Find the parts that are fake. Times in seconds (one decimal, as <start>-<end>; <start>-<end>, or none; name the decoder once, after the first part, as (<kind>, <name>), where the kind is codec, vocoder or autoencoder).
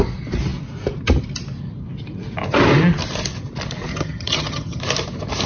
3.9-4.8 (vocoder, HiFi-GAN)